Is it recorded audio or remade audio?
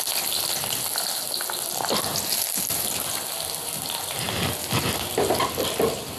recorded